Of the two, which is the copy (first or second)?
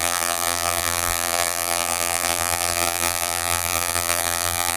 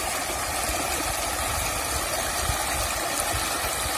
first